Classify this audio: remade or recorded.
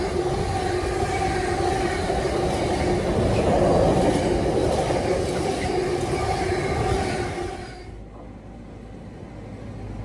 recorded